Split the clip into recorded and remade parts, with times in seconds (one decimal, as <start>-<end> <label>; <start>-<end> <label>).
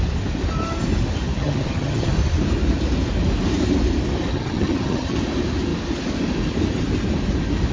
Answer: 0.0-1.4 recorded; 1.4-2.1 remade; 2.1-4.3 recorded; 4.3-5.2 remade; 5.2-7.7 recorded